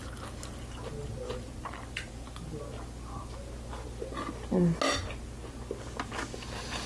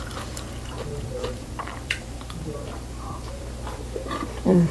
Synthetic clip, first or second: second